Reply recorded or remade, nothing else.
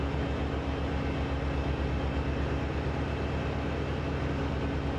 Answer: recorded